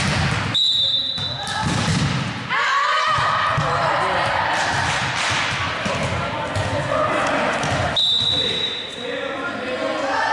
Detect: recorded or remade recorded